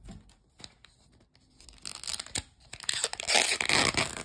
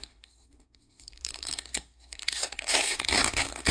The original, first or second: first